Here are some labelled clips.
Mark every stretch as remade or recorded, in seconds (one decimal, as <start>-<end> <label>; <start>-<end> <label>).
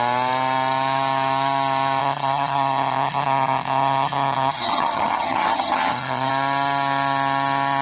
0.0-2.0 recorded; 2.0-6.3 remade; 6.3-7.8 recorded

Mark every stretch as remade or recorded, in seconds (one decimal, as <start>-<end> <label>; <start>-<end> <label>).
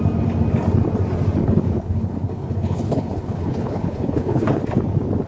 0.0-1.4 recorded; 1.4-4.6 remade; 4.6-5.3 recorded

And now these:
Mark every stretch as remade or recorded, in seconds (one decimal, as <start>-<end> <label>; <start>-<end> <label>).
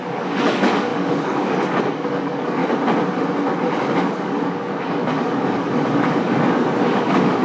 0.0-2.6 remade; 2.6-3.9 recorded; 3.9-7.4 remade